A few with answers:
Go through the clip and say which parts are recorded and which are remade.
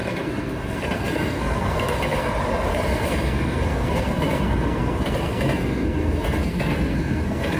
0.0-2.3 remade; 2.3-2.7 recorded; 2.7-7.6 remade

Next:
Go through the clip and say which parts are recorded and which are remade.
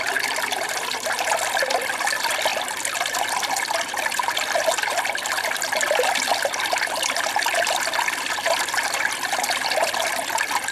0.0-10.7 recorded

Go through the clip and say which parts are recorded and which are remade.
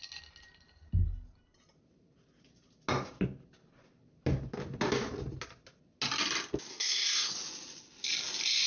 0.0-6.7 recorded; 6.7-7.3 remade; 7.3-8.7 recorded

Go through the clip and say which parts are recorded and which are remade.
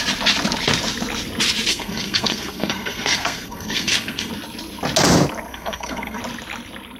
0.0-1.7 recorded; 1.7-4.3 remade; 4.3-5.5 recorded; 5.5-6.2 remade; 6.2-7.0 recorded